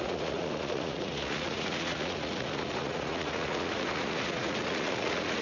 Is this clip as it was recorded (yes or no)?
no